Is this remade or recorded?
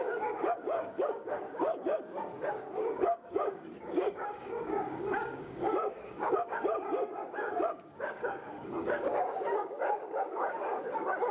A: remade